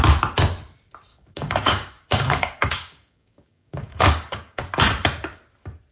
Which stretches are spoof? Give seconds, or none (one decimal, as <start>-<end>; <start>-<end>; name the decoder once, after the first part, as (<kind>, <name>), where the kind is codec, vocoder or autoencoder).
1.1-4.6 (codec, DAC)